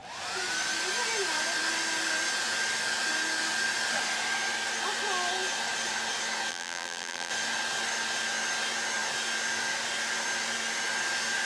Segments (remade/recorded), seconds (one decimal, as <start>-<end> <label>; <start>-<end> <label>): 0.0-6.5 recorded; 6.5-7.3 remade; 7.3-11.5 recorded